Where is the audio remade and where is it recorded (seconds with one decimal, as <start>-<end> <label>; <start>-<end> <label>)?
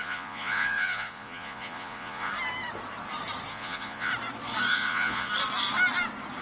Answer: 0.0-2.3 remade; 2.3-3.5 recorded; 3.5-4.1 remade; 4.1-4.7 recorded; 4.7-5.3 remade; 5.3-6.4 recorded